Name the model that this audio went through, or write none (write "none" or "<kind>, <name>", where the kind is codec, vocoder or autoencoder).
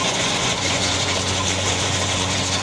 vocoder, Vocos